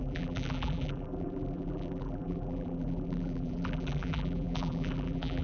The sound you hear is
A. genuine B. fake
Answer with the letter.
B